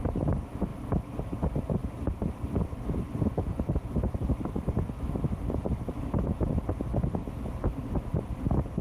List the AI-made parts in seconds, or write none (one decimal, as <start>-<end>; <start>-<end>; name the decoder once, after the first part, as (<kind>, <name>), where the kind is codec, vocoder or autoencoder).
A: 0.7-1.2 (vocoder, BigVGAN v2); 1.8-6.0